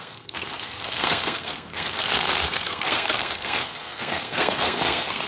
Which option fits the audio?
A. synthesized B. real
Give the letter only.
A